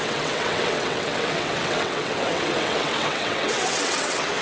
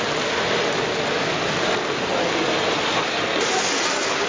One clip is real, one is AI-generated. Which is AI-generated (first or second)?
first